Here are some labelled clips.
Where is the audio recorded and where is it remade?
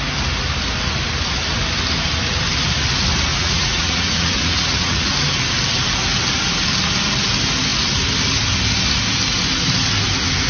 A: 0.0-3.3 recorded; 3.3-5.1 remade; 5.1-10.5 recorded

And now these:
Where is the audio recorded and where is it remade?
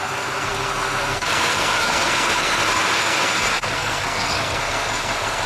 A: 0.0-5.5 remade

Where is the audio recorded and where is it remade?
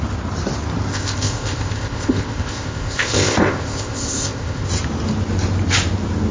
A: 0.0-0.9 recorded; 0.9-4.7 remade; 4.7-6.3 recorded